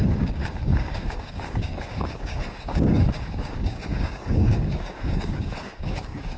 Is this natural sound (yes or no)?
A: no